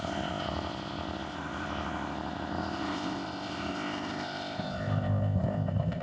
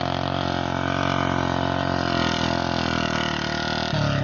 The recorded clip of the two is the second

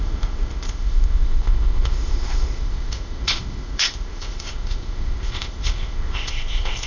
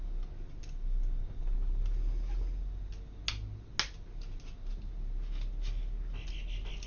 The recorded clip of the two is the second